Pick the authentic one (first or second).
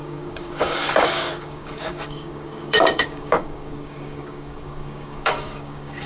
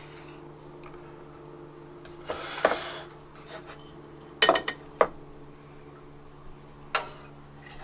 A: second